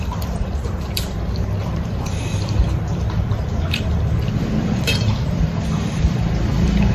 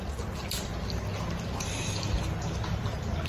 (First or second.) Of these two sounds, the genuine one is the second